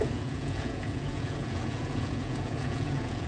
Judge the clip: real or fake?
fake